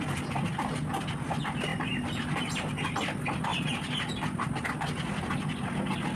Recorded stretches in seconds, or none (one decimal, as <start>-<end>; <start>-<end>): 0.0-1.7; 3.1-6.2